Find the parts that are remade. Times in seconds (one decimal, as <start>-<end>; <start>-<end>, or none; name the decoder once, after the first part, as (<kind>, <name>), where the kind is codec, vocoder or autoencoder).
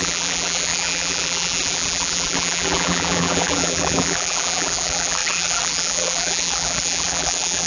0.0-7.7 (vocoder, BigVGAN v2)